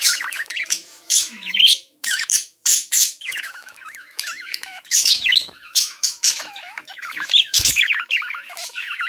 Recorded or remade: remade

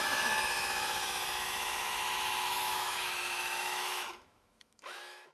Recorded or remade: remade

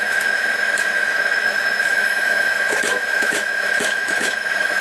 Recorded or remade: remade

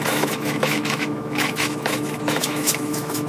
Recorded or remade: remade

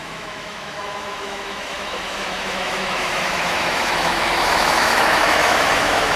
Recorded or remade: remade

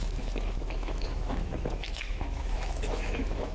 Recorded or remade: remade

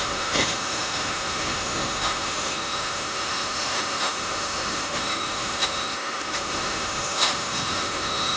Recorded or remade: remade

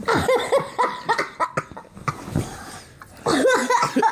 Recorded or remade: recorded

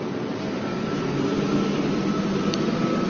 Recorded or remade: recorded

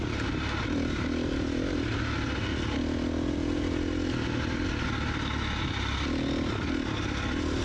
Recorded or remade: recorded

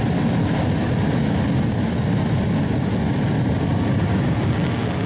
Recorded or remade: recorded